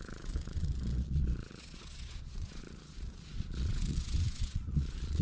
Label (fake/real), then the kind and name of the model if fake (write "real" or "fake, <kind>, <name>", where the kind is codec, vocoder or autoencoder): fake, vocoder, Vocos